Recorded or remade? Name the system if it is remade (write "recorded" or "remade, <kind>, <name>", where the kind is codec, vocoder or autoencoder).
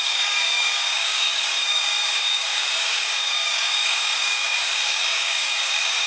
remade, codec, DAC